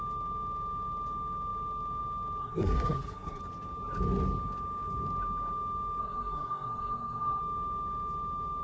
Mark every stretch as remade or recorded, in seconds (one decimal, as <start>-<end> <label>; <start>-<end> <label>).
0.0-2.4 recorded; 2.4-3.4 remade; 3.4-6.0 recorded; 6.0-7.4 remade; 7.4-8.6 recorded